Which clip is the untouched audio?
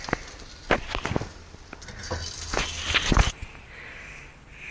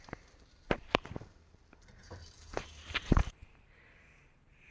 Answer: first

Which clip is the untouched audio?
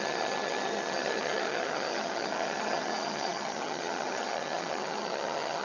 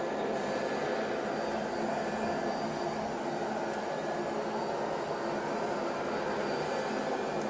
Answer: second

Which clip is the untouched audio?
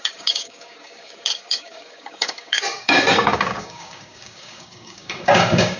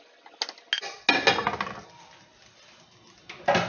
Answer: second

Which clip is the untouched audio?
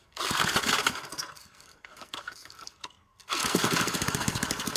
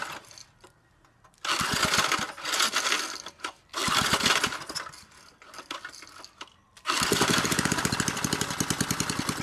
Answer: second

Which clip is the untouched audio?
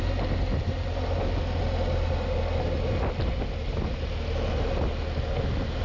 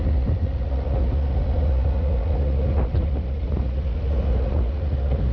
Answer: first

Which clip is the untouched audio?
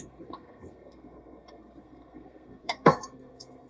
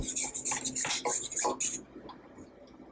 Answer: second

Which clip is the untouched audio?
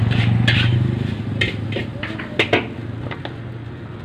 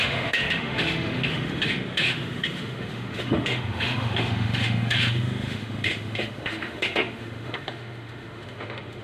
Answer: first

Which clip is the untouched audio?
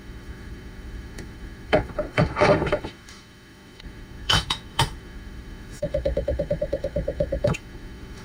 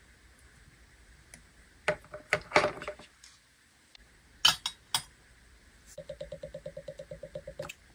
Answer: second